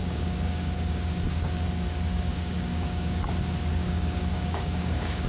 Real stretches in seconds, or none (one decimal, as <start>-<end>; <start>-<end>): 3.2-3.7